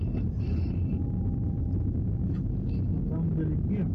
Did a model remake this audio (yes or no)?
no